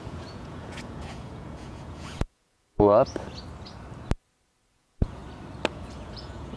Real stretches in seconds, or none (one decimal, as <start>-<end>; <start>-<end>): 2.9-4.7; 5.2-5.7